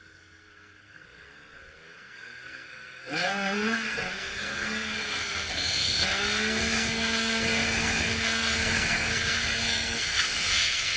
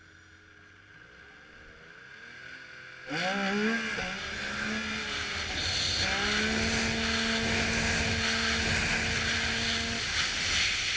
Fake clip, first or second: first